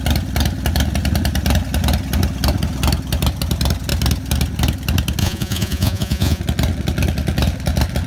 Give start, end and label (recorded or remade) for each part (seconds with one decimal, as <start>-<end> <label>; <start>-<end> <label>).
0.0-5.2 recorded; 5.2-6.4 remade; 6.4-8.1 recorded